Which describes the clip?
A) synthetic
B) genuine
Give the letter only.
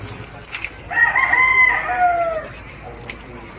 B